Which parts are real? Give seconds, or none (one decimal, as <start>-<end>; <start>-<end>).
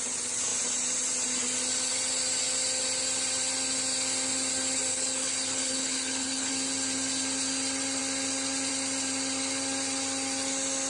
0.0-4.9; 6.5-10.9